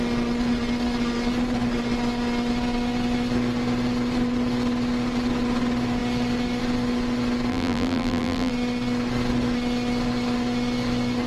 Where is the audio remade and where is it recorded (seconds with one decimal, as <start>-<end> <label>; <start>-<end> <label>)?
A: 0.0-7.5 recorded; 7.5-8.5 remade; 8.5-11.3 recorded